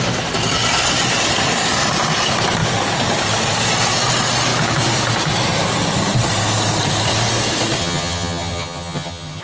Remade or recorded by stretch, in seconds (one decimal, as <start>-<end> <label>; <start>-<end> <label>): 0.0-7.8 recorded; 7.8-9.4 remade